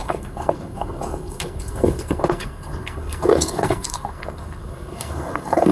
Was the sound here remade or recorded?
remade